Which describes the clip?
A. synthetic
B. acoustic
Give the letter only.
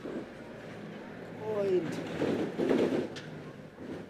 B